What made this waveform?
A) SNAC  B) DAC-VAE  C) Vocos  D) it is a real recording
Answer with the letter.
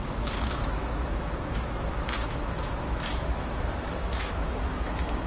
B